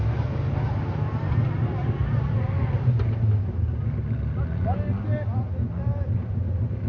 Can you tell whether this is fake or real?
real